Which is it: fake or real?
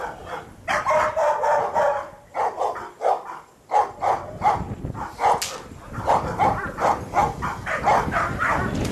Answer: real